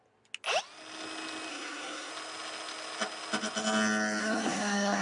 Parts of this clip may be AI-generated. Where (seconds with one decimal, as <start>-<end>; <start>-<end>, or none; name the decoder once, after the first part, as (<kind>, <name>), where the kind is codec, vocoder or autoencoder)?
1.5-2.1 (codec, SNAC); 4.2-5.0